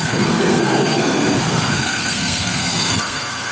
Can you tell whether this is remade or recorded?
remade